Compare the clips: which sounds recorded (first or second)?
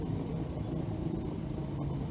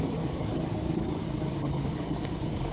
first